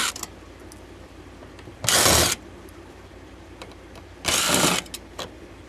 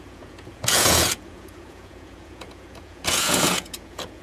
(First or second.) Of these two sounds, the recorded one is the first